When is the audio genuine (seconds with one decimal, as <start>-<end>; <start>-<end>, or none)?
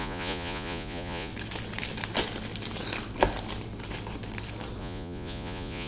1.3-4.8